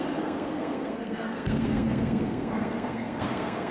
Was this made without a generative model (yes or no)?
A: no